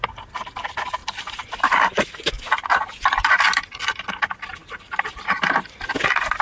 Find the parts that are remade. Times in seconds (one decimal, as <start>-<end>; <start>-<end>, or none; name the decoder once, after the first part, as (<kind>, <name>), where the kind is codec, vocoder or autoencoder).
1.0-2.3 (vocoder, BigVGAN v2)